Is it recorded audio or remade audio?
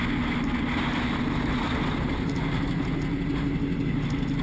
recorded